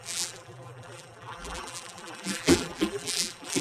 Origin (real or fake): fake